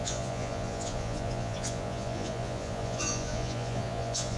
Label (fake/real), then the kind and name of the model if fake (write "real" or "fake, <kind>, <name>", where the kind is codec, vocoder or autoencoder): fake, vocoder, Vocos